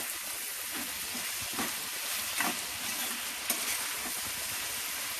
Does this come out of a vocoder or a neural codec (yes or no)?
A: no